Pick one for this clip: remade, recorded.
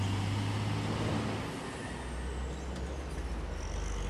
recorded